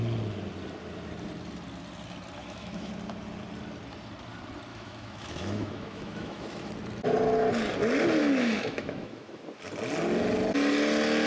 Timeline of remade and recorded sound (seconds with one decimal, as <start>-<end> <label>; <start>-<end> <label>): 0.0-2.4 recorded; 2.4-2.9 remade; 2.9-4.7 recorded; 4.7-6.7 remade; 6.7-8.2 recorded; 8.2-9.4 remade; 9.4-11.3 recorded